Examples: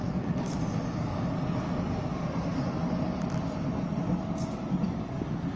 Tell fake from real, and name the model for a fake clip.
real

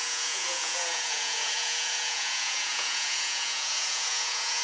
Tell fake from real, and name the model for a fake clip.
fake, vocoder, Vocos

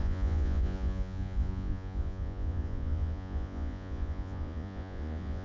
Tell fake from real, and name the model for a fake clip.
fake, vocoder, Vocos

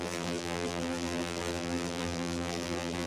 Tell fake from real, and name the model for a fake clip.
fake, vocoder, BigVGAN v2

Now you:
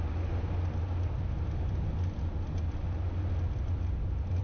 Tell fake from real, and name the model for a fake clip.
real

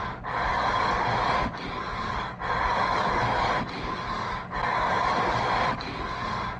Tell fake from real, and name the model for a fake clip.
fake, codec, DAC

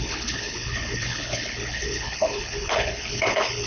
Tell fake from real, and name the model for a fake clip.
fake, codec, HILCodec